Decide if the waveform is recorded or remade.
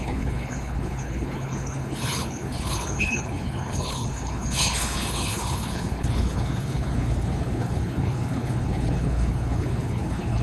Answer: remade